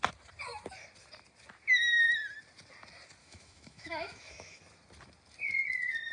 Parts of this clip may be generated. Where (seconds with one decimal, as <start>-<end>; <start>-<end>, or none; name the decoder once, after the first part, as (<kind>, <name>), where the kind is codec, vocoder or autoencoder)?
3.2-4.6 (autoencoder, DAC-VAE)